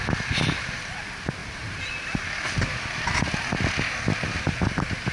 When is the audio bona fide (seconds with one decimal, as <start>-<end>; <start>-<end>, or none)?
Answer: 0.0-5.1